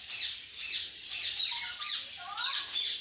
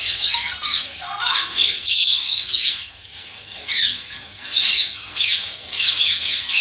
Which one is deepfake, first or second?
second